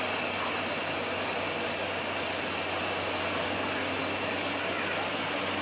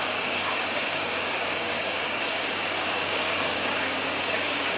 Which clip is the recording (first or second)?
first